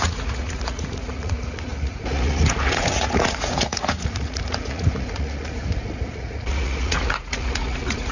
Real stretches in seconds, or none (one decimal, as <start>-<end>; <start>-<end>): none